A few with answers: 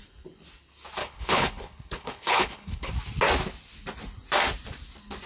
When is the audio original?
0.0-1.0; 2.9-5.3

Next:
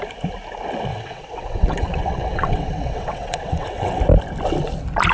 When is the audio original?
0.0-0.9; 4.0-5.1